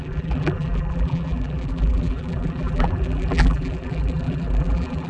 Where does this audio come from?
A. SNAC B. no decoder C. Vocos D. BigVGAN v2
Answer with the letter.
D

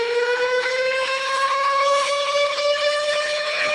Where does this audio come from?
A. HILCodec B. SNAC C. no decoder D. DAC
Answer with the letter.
A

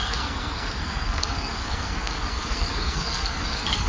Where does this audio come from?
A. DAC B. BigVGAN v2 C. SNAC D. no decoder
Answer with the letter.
C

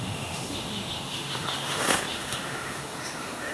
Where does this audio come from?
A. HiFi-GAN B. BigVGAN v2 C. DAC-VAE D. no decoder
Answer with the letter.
C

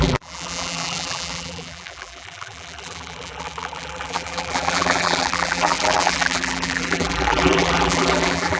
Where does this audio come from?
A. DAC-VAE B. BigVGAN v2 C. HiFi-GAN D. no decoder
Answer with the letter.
B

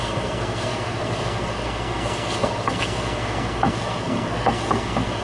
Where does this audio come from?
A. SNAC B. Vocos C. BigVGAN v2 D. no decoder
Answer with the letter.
A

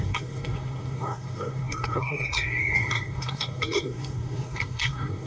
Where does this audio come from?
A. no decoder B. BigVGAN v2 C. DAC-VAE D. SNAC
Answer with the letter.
D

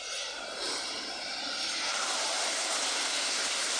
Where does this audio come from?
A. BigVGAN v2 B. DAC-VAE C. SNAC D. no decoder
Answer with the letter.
A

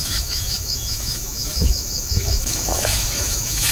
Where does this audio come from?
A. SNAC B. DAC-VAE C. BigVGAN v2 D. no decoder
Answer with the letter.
B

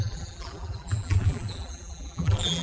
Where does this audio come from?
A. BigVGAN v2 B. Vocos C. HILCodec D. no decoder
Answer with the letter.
A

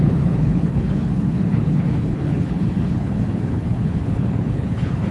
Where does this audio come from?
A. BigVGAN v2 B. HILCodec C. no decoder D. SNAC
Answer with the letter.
B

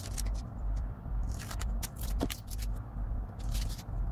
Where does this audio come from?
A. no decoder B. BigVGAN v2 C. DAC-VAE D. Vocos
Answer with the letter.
B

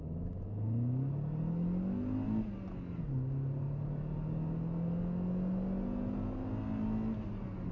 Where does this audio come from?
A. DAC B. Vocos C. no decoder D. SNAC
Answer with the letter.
C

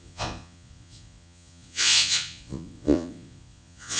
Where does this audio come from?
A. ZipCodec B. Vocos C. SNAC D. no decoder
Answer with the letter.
B